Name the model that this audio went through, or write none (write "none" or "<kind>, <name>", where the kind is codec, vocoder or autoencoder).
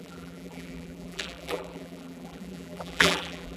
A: vocoder, BigVGAN v2